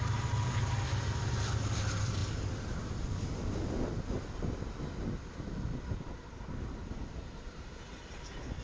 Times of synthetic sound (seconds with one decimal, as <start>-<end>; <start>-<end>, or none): none